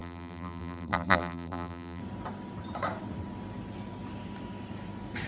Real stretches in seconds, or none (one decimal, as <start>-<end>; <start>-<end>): 2.0-5.3